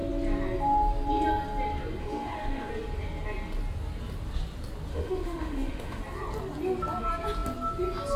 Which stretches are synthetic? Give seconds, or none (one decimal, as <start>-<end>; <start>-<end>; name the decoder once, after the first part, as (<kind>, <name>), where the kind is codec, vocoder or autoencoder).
2.0-2.7 (autoencoder, DAC-VAE); 4.9-6.0